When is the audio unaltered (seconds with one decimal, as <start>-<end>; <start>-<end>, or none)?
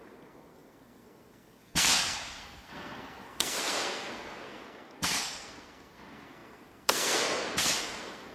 none